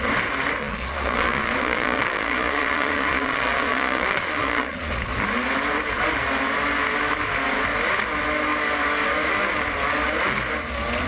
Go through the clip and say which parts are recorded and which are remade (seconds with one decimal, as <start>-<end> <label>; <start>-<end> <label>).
0.0-0.6 recorded; 0.6-4.9 remade; 4.9-11.1 recorded